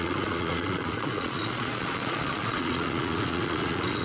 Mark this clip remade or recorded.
remade